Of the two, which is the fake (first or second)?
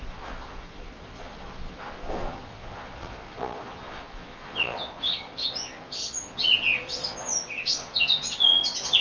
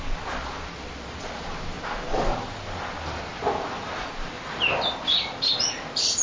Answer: first